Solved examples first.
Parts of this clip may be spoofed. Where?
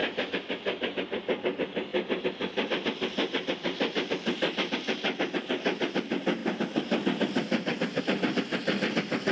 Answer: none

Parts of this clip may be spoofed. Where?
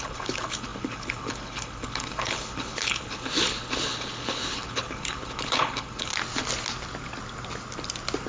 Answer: 0.0-6.1 (codec, HILCodec)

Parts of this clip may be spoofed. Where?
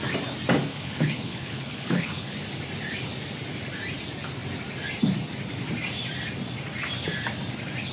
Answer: 0.7-2.3 (codec, HILCodec)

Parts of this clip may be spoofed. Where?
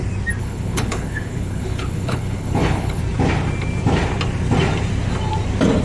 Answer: 0.4-3.0 (codec, HILCodec)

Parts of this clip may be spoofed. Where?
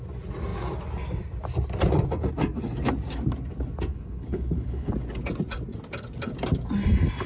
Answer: 3.9-4.9 (codec, HILCodec)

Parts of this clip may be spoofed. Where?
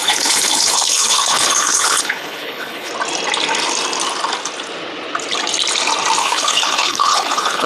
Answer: 0.0-2.9 (codec, HILCodec); 6.2-7.7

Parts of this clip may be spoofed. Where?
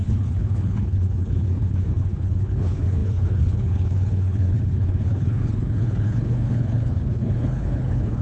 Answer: 0.0-8.2 (codec, HILCodec)